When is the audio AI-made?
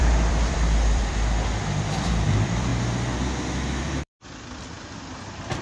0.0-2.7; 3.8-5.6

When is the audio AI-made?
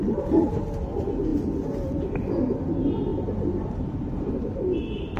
3.1-4.3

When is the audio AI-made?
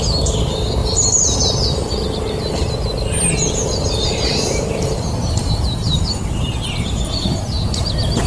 0.8-1.4; 4.0-7.0